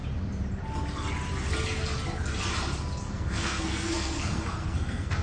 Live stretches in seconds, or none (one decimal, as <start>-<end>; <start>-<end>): 0.0-3.0